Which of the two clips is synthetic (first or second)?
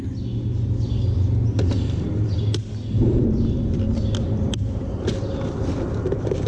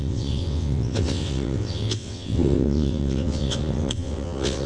second